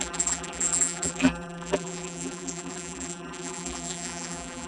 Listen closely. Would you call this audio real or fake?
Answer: fake